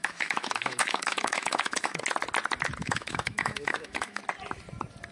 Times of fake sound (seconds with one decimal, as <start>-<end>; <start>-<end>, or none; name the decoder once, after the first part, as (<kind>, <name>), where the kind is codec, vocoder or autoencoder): 0.0-2.0 (autoencoder, DAC-VAE); 2.8-4.2